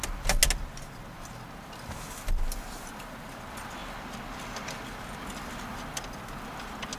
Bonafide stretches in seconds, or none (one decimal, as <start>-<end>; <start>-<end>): 0.0-7.0